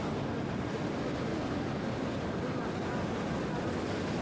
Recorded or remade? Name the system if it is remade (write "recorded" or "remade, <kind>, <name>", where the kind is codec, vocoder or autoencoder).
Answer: recorded